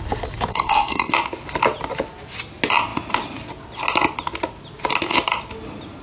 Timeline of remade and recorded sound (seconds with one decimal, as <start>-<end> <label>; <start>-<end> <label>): 0.0-0.5 recorded; 0.5-1.1 remade; 1.1-6.0 recorded